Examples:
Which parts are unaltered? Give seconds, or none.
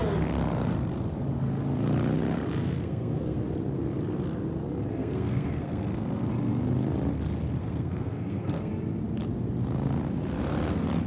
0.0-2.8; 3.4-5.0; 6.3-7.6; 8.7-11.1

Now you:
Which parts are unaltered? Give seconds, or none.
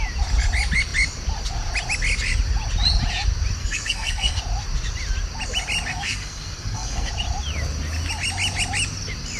0.0-3.6; 4.4-5.9; 7.1-9.4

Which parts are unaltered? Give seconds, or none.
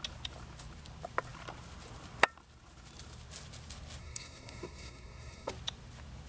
0.0-4.0; 5.5-6.3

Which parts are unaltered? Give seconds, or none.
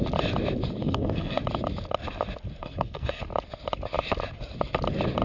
0.0-0.8; 1.4-2.6; 3.2-5.2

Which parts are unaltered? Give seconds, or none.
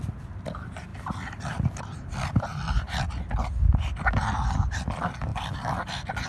0.0-6.3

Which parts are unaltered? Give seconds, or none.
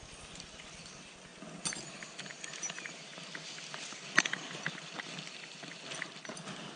0.0-6.8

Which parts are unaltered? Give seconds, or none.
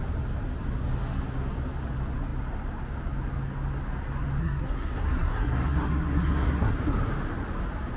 0.0-4.4; 6.7-8.0